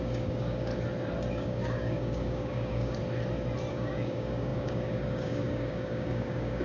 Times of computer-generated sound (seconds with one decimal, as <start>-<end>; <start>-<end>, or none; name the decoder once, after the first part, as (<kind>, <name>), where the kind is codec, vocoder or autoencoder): 0.0-0.7 (codec, DAC); 1.3-3.0; 3.7-6.6